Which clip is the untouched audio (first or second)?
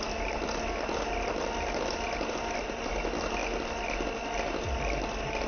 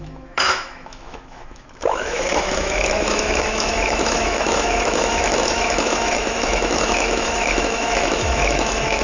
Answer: first